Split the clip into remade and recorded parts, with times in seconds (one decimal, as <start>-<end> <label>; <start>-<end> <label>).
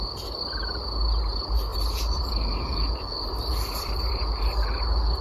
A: 0.0-1.7 recorded; 1.7-4.8 remade; 4.8-5.2 recorded